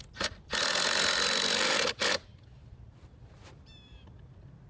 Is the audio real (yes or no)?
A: no